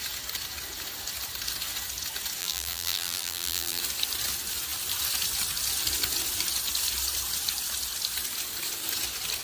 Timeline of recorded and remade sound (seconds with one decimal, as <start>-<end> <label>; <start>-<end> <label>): 0.0-2.4 recorded; 2.4-3.8 remade; 3.8-9.4 recorded